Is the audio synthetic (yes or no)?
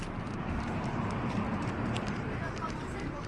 yes